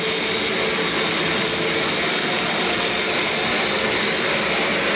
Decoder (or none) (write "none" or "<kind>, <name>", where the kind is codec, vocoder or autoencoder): none